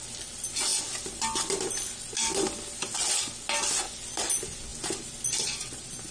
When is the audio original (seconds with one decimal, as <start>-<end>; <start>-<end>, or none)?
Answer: 0.0-6.1